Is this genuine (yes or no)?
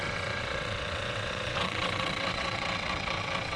no